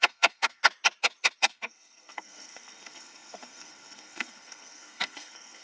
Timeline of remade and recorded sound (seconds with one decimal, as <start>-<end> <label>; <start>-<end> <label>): 0.0-0.6 remade; 0.6-1.4 recorded; 1.4-5.6 remade